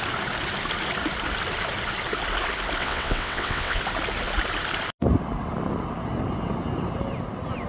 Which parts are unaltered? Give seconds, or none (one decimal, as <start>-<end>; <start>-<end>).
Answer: 0.0-2.8; 3.8-7.7